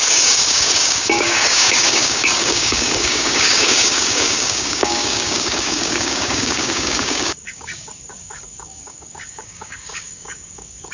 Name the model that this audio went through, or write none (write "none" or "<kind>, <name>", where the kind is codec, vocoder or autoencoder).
codec, DAC